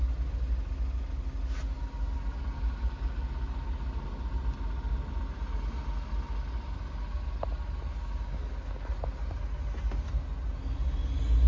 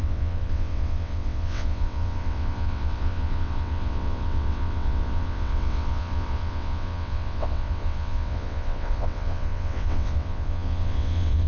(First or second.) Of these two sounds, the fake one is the second